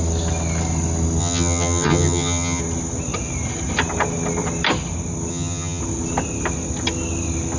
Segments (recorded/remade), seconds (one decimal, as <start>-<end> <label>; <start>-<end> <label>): 0.0-1.2 recorded; 1.2-2.6 remade; 2.6-5.3 recorded; 5.3-5.8 remade; 5.8-7.6 recorded